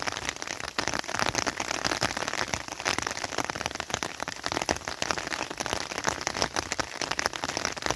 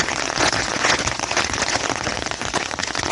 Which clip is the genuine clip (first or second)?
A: first